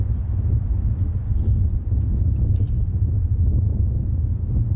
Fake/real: real